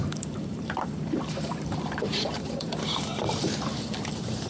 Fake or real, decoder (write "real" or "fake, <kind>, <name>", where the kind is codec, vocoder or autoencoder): fake, vocoder, BigVGAN v2